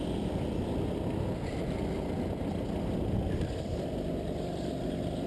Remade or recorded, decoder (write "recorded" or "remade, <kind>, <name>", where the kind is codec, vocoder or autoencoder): recorded